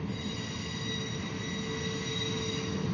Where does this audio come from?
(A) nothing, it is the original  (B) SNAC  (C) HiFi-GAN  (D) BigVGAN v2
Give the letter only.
A